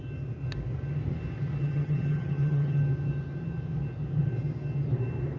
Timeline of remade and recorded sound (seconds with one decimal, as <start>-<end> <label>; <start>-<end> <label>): 0.0-1.6 recorded; 1.6-2.8 remade; 2.8-5.4 recorded